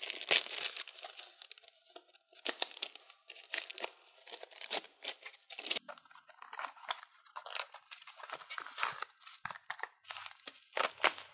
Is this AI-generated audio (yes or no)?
no